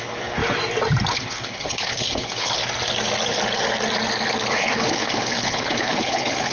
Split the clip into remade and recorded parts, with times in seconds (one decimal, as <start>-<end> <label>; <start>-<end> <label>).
0.0-0.4 remade; 0.4-1.1 recorded; 1.1-2.6 remade; 2.6-4.5 recorded; 4.5-6.5 remade